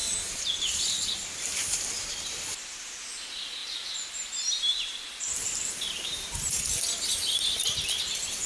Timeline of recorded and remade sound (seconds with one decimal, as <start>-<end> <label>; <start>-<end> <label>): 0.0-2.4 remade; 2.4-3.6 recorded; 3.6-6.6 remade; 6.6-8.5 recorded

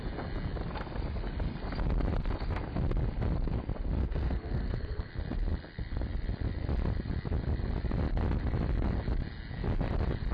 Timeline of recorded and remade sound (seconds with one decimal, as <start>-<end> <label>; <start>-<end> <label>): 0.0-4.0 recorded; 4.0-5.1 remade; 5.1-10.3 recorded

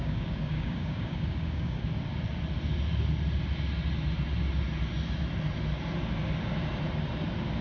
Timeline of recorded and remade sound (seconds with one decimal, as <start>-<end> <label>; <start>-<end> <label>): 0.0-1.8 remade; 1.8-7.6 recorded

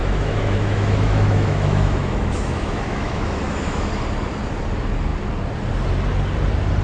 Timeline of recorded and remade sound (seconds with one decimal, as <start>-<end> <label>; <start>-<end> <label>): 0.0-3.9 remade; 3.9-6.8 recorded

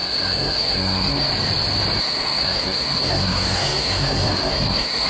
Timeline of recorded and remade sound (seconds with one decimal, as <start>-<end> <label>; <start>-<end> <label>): 0.0-1.3 remade; 1.3-2.0 recorded; 2.0-5.1 remade

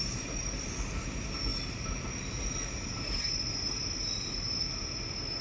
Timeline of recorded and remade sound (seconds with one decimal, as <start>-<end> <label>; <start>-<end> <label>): 0.0-5.4 recorded

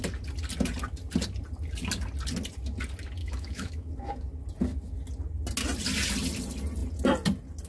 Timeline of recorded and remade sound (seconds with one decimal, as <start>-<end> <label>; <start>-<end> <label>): 0.0-3.2 recorded; 3.2-3.9 remade; 3.9-7.7 recorded